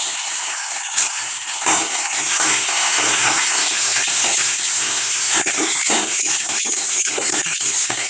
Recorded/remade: remade